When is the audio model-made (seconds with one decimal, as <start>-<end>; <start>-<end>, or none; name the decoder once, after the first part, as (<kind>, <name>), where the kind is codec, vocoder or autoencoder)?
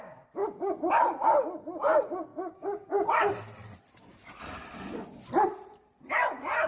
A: 0.0-0.4 (vocoder, BigVGAN v2); 0.9-6.7